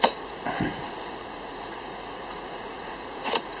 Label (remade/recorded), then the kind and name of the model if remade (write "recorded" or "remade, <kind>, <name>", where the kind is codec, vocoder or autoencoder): remade, vocoder, Vocos